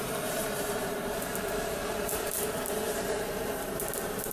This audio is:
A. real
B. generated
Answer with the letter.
B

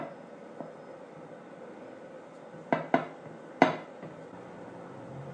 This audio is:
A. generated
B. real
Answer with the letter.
B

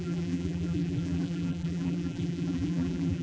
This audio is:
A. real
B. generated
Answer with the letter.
B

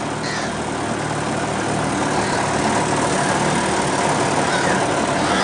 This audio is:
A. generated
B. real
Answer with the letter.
B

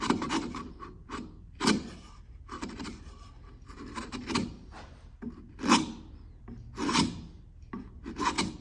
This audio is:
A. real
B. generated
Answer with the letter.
B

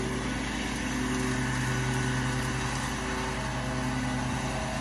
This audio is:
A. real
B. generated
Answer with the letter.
A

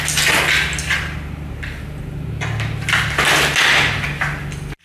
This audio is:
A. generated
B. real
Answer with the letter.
B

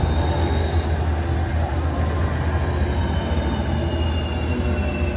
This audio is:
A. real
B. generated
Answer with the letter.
A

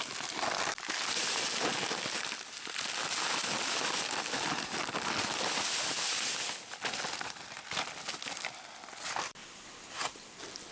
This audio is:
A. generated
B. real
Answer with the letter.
B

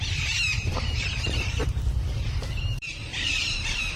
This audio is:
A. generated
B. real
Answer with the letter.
A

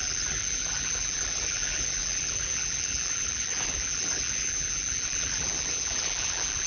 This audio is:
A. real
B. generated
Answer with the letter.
B